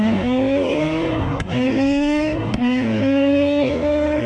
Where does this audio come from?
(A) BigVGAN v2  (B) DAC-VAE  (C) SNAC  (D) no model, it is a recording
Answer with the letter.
C